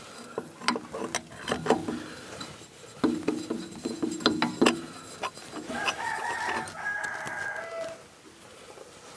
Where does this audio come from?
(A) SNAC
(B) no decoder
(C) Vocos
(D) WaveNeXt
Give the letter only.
B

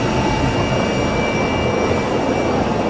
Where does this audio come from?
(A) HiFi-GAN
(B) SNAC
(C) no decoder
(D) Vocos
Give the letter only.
C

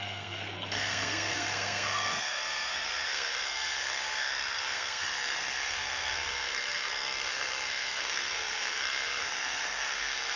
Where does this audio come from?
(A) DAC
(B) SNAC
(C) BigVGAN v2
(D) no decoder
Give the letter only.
B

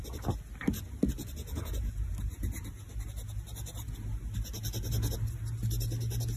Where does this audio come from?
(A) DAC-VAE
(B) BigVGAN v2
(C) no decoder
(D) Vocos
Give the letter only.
C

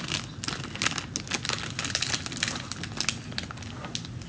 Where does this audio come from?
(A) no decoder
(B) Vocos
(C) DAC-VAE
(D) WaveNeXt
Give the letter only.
A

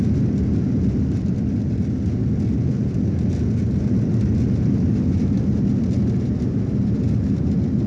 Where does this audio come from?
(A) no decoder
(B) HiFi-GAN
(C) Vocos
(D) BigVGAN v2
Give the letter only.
A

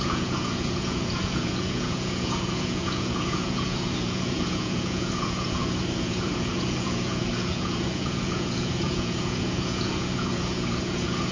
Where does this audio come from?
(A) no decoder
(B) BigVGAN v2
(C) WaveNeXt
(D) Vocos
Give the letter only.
D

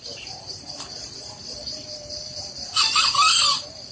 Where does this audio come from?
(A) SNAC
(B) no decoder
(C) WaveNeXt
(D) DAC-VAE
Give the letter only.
B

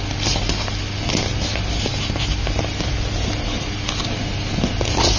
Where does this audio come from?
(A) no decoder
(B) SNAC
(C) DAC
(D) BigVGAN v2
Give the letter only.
A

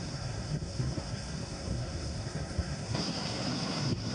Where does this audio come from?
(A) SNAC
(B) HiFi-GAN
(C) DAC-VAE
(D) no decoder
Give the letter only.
A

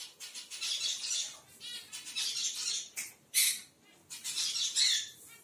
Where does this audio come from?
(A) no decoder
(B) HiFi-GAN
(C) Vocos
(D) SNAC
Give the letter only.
A